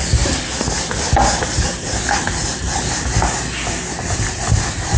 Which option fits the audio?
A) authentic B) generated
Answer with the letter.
A